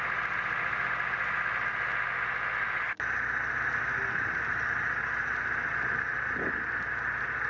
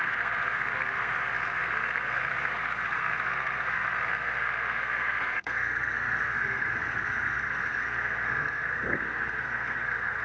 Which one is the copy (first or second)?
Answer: second